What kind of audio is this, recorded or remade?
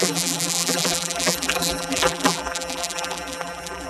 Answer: remade